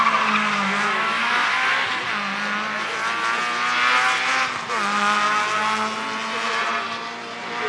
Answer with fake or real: real